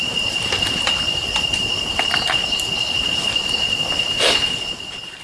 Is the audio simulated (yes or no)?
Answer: no